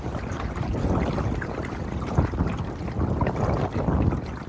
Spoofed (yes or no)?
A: no